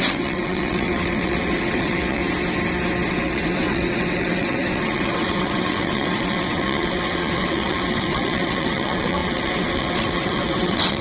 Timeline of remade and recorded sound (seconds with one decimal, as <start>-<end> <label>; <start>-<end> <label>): 0.0-2.2 remade; 2.2-3.1 recorded; 3.1-11.0 remade